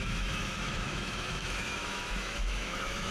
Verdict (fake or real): fake